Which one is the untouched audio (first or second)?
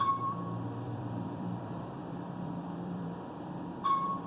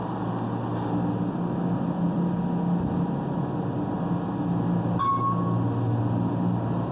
second